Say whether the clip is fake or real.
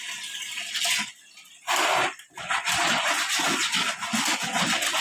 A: real